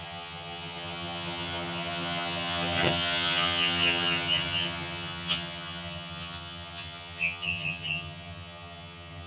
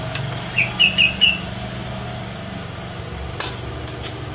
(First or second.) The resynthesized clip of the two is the first